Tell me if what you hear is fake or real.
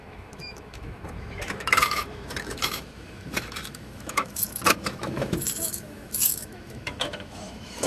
fake